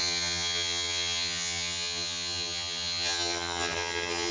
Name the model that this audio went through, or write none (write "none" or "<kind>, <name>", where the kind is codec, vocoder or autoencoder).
vocoder, HiFi-GAN